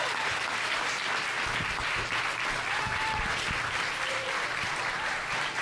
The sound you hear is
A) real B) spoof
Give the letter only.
B